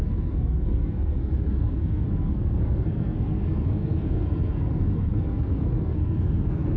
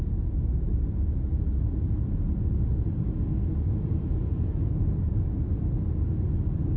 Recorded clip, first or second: second